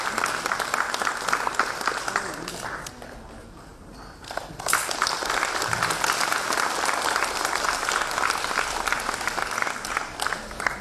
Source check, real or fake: real